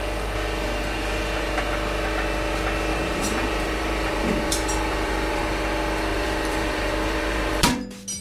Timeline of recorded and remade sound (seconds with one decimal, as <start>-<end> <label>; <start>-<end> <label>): 0.0-2.9 recorded; 2.9-5.4 remade; 5.4-6.1 recorded; 6.1-7.5 remade; 7.5-8.2 recorded